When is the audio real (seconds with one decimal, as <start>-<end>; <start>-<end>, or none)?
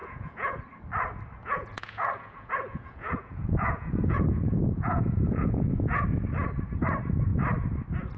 0.6-1.4; 6.0-8.2